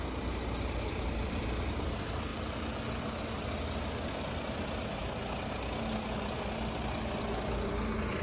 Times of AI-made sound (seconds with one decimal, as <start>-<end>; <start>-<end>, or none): none